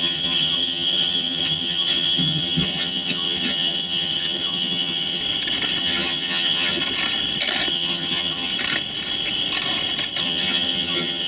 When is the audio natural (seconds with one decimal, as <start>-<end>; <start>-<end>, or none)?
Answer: 5.2-5.8; 6.8-7.7; 8.5-10.2